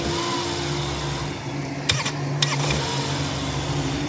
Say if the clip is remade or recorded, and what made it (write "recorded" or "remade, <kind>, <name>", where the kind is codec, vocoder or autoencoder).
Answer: recorded